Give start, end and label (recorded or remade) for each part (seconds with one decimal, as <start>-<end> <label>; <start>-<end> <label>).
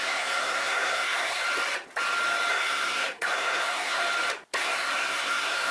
0.0-1.4 remade; 1.4-2.5 recorded; 2.5-4.0 remade; 4.0-4.6 recorded; 4.6-5.7 remade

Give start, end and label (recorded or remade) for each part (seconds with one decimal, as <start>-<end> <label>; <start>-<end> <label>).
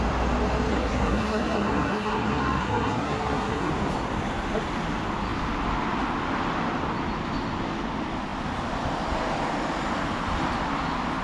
0.0-0.7 recorded; 0.7-3.7 remade; 3.7-11.2 recorded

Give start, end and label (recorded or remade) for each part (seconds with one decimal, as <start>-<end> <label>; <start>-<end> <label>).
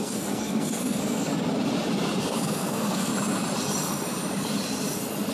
0.0-1.3 remade; 1.3-2.2 recorded; 2.2-3.1 remade; 3.1-5.3 recorded